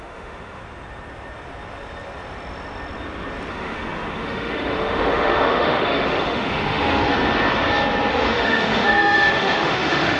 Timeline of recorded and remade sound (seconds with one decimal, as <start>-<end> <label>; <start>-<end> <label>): 0.0-0.6 remade; 0.6-3.5 recorded; 3.5-7.1 remade; 7.1-8.1 recorded; 8.1-10.2 remade